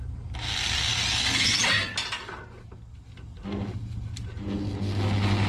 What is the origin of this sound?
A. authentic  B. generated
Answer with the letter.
A